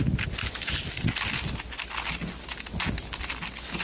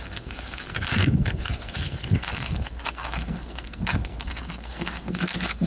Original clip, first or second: first